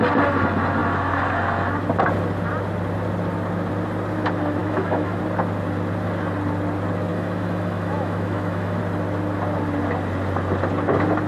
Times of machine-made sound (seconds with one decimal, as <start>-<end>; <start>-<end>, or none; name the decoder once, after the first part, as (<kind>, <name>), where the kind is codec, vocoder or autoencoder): 4.6-5.2 (autoencoder, DAC-VAE); 7.1-8.8

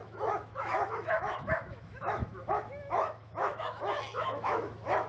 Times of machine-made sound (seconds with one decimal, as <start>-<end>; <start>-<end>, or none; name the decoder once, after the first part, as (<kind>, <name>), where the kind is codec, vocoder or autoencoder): 0.0-5.1 (autoencoder, DAC-VAE)

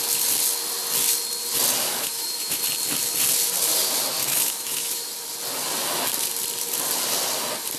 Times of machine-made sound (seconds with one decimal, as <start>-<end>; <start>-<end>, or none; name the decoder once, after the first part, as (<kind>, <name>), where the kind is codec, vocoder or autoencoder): 1.8-2.6 (autoencoder, DAC-VAE); 4.2-5.1

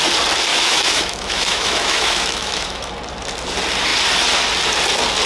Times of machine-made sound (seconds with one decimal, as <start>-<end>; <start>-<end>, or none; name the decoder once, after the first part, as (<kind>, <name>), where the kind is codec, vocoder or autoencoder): 0.5-2.9 (autoencoder, DAC-VAE)